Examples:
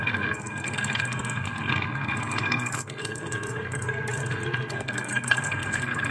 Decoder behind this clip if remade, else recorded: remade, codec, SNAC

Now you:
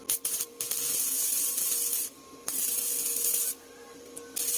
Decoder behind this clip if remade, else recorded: recorded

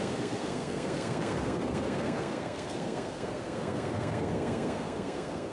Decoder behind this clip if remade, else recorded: remade, codec, SNAC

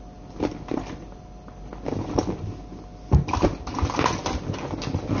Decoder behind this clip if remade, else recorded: recorded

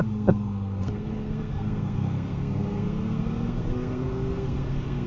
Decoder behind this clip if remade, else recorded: remade, codec, SNAC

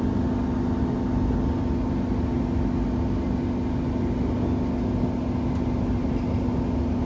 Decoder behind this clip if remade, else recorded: recorded